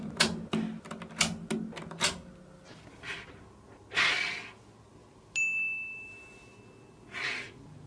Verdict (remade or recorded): recorded